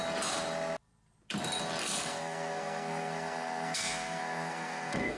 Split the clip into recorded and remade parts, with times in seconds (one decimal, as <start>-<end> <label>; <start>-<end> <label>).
0.0-1.8 recorded; 1.8-5.2 remade